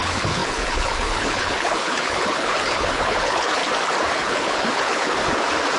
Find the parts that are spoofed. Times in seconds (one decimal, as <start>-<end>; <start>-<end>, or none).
0.0-3.6; 4.1-5.2